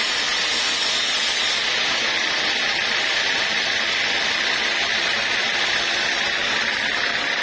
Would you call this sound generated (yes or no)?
no